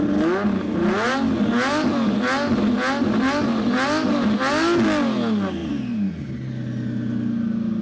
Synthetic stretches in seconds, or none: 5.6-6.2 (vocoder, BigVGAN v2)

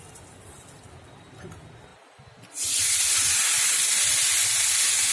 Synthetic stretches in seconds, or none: none

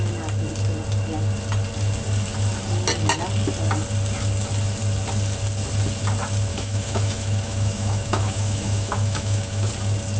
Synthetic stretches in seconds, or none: 6.5-9.7 (autoencoder, DAC-VAE)

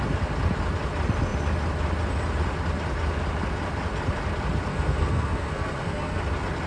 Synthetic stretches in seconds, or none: 4.7-6.2 (codec, SNAC)

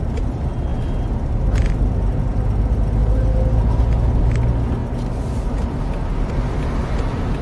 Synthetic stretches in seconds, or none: none

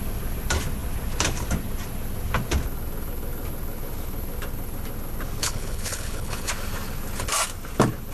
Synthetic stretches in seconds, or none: 5.4-6.5 (codec, HILCodec)

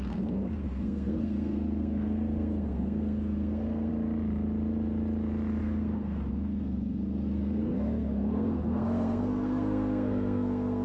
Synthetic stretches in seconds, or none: 0.0-3.9 (codec, SNAC); 5.6-10.8

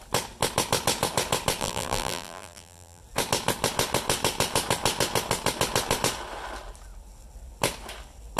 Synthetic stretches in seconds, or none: 1.6-3.0 (vocoder, BigVGAN v2)